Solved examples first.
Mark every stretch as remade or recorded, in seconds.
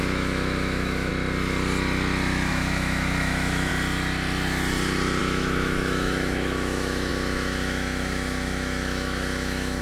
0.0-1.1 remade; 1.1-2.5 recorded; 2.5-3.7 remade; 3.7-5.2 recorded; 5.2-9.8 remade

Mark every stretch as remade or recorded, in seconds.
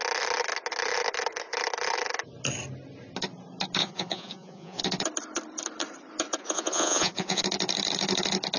0.0-3.8 recorded; 3.8-4.8 remade; 4.8-6.4 recorded; 6.4-7.4 remade; 7.4-8.6 recorded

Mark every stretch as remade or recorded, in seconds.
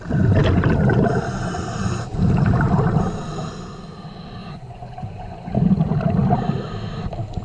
0.0-4.4 recorded; 4.4-5.5 remade; 5.5-7.4 recorded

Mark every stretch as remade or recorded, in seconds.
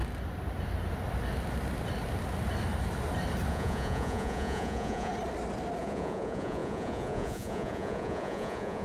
0.0-3.5 recorded; 3.5-5.1 remade; 5.1-5.8 recorded; 5.8-8.8 remade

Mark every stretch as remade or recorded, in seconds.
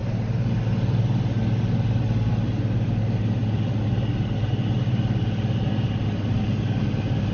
0.0-7.3 recorded